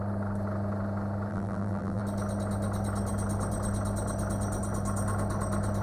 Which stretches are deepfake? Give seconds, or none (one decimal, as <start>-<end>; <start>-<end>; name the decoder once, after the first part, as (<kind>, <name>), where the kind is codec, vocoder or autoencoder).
1.3-2.0 (vocoder, BigVGAN v2)